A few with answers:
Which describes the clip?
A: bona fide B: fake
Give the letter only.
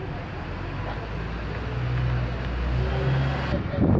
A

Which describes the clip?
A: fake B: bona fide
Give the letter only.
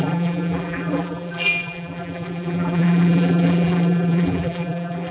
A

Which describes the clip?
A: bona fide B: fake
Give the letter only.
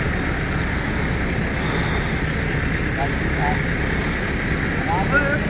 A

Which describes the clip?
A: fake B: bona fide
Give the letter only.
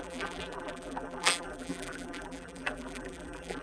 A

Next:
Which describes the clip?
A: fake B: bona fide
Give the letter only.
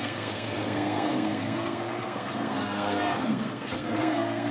A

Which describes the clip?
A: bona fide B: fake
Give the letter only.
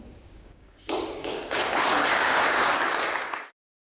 B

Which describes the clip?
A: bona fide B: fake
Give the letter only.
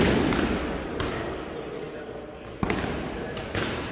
A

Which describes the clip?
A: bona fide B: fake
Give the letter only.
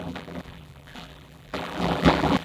B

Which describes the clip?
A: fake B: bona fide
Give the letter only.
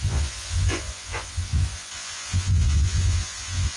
A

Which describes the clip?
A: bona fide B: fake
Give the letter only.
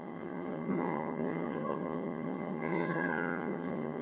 B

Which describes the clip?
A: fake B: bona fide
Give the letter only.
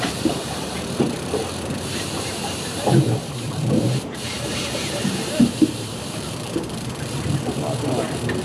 A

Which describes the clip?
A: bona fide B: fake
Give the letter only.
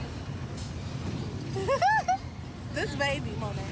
A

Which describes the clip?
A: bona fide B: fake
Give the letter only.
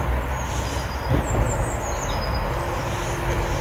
A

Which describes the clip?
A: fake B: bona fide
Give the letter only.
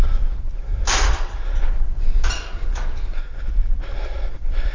B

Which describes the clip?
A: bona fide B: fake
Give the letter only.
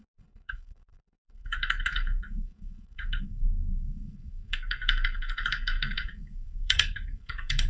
B